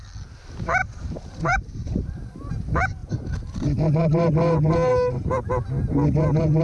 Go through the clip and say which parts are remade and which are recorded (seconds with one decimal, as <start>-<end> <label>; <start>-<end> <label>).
0.0-0.8 recorded; 0.8-2.2 remade; 2.2-3.0 recorded; 3.0-5.5 remade; 5.5-6.6 recorded